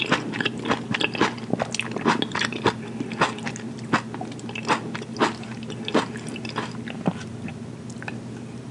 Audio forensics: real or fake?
real